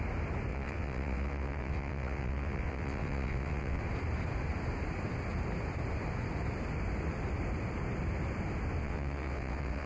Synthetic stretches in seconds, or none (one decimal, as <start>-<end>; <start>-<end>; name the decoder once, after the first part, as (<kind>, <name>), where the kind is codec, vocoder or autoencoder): 0.5-3.8 (vocoder, WaveNeXt); 8.8-9.9